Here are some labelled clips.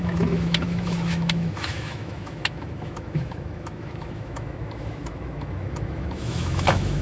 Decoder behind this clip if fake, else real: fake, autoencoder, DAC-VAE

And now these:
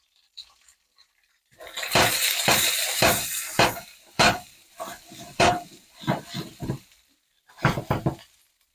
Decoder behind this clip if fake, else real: fake, vocoder, BigVGAN v2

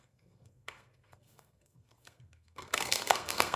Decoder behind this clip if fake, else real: fake, codec, SNAC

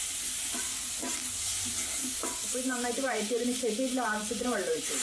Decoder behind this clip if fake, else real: fake, vocoder, BigVGAN v2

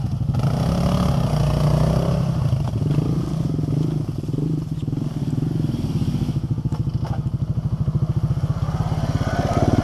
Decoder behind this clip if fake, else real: real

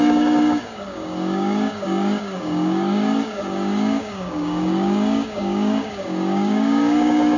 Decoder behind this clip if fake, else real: fake, codec, DAC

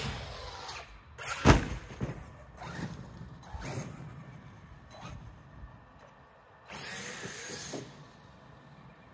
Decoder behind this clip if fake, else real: real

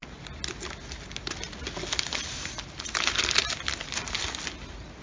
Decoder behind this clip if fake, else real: real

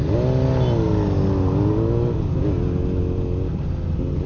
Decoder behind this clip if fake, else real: real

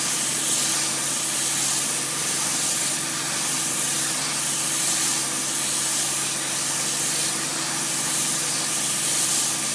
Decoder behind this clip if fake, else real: real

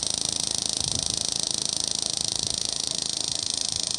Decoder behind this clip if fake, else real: fake, vocoder, BigVGAN v2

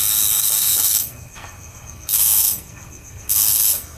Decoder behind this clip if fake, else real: fake, codec, SNAC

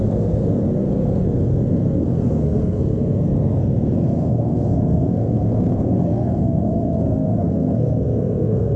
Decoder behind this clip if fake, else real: fake, codec, SNAC